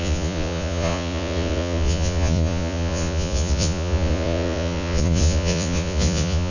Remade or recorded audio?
remade